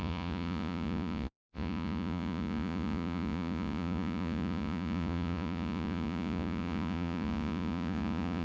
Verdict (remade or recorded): remade